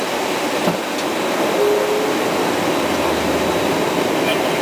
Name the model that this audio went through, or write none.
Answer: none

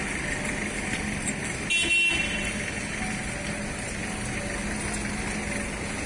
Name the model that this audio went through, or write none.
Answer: none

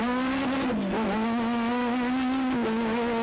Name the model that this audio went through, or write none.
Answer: none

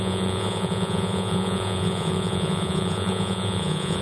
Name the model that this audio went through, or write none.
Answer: vocoder, Vocos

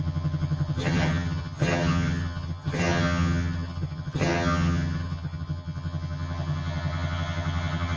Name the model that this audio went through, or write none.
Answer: vocoder, HiFi-GAN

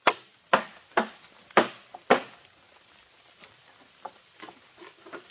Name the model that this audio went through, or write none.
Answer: none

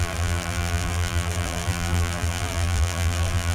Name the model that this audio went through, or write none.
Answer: vocoder, BigVGAN v2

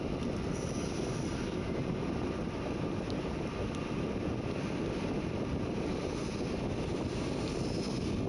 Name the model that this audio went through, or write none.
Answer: none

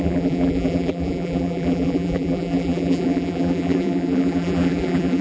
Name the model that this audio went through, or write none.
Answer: vocoder, BigVGAN v2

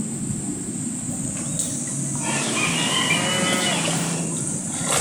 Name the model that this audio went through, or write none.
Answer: none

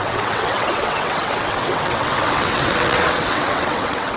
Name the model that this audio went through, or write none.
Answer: vocoder, WaveNeXt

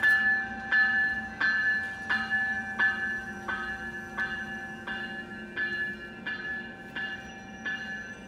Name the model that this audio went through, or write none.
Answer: none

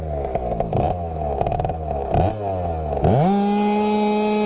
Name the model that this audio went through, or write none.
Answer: none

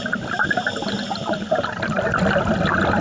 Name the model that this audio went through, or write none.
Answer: none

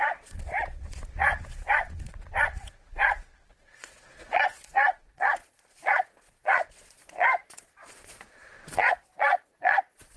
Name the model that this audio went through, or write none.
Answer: vocoder, Vocos